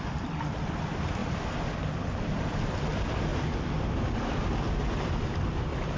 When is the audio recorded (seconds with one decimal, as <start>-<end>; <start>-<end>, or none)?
1.2-1.8; 3.3-4.3